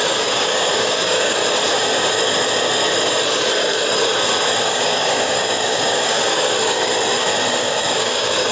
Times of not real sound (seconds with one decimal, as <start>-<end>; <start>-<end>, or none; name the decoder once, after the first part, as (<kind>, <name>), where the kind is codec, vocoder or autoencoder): 0.0-1.4 (codec, DAC); 4.6-6.9; 7.6-8.5